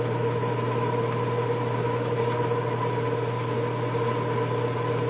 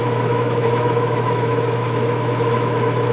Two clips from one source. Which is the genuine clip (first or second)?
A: first